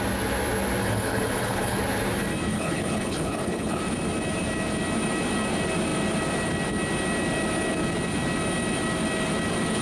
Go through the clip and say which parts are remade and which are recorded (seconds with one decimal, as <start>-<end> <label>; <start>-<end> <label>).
0.0-0.8 recorded; 0.8-1.8 remade; 1.8-2.5 recorded; 2.5-3.8 remade; 3.8-9.8 recorded

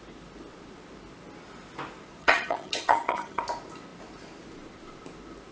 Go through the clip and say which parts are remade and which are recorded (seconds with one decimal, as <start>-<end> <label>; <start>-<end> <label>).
0.0-2.2 recorded; 2.2-3.4 remade; 3.4-5.5 recorded

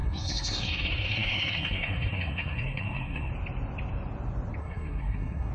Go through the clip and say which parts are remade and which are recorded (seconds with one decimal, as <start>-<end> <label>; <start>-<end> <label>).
0.0-3.3 remade; 3.3-4.6 recorded; 4.6-5.5 remade

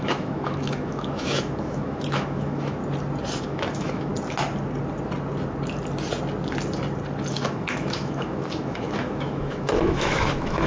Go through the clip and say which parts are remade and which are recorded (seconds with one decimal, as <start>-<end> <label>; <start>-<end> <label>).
0.0-2.8 remade; 2.8-3.4 recorded; 3.4-4.1 remade; 4.1-7.3 recorded; 7.3-10.7 remade

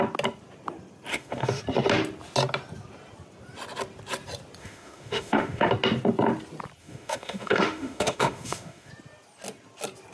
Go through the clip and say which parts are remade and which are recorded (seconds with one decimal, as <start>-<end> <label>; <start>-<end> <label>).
0.0-1.1 recorded; 1.1-1.6 remade; 1.6-4.6 recorded; 4.6-5.7 remade; 5.7-6.8 recorded; 6.8-8.9 remade; 8.9-10.1 recorded

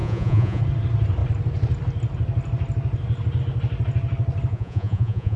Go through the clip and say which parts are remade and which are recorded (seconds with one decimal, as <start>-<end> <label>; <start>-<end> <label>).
0.0-0.6 remade; 0.6-4.5 recorded; 4.5-5.4 remade